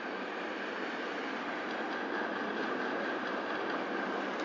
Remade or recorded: recorded